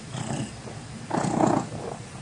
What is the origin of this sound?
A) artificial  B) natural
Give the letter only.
B